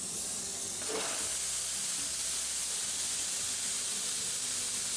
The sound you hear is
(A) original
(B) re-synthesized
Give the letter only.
A